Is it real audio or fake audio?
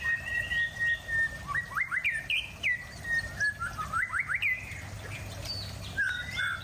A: real